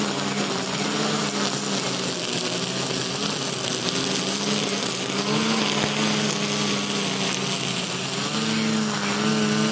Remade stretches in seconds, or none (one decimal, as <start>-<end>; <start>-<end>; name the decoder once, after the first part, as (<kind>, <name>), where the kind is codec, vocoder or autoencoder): none